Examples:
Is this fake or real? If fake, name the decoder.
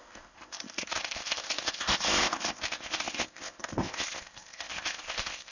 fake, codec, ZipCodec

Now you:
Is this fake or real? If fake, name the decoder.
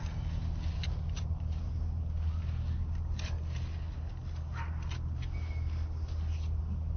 real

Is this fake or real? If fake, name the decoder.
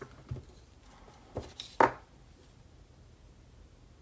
real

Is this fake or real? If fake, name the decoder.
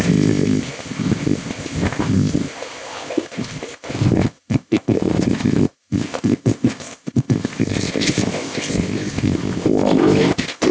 fake, codec, ZipCodec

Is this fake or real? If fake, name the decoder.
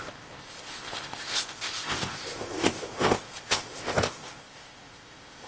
fake, codec, ZipCodec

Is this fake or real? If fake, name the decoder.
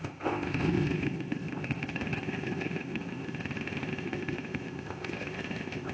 fake, codec, ZipCodec